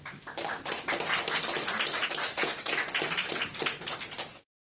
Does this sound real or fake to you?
real